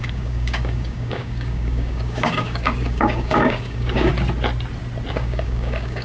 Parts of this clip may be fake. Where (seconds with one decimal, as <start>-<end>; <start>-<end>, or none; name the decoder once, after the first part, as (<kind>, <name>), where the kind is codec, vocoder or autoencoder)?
0.0-4.1 (codec, DAC); 5.1-6.0